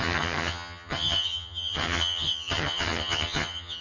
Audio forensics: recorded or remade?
remade